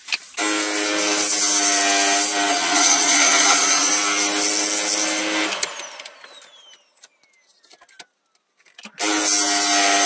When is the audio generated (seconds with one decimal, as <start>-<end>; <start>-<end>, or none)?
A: 2.5-3.9

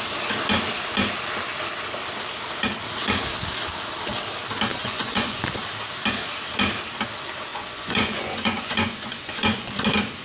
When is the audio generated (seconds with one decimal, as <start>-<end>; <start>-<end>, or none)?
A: 4.7-5.4; 7.5-9.7

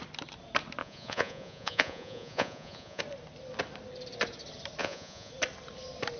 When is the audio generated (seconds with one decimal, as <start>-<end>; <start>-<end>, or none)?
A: 0.8-3.0; 4.8-5.3

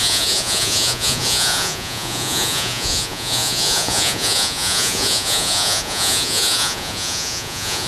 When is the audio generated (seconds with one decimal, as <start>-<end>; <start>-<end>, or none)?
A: 0.0-7.9

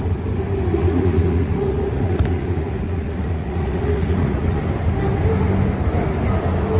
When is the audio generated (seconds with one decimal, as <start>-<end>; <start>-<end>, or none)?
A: 0.7-4.6

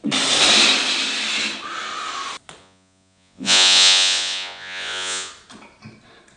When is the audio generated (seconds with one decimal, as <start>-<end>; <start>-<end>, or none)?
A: 2.6-5.3

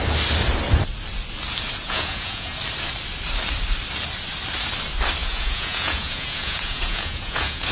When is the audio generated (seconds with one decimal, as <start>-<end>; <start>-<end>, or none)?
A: 1.8-2.6; 5.2-7.7